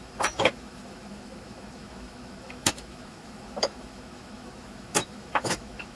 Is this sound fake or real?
fake